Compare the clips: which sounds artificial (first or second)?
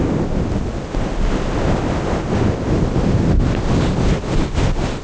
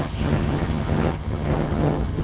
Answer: second